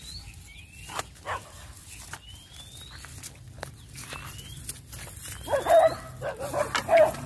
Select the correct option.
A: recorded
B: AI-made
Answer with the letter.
A